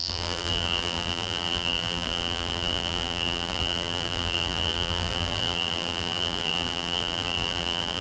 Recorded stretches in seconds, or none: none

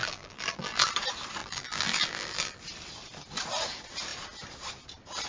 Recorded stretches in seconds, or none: 0.9-1.4; 2.6-5.3

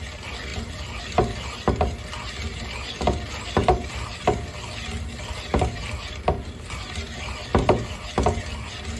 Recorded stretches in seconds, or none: 0.0-0.5; 1.0-3.6; 4.2-7.5; 8.0-9.0